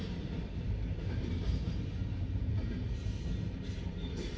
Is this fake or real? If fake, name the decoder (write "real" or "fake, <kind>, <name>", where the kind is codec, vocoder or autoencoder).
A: fake, vocoder, BigVGAN v2